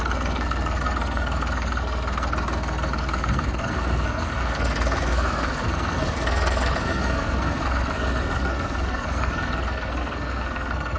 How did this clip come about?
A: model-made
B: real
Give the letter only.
A